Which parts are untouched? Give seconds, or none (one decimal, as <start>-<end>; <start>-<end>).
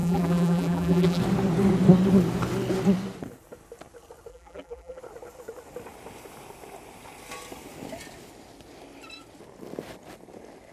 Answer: 1.2-4.3; 5.0-10.7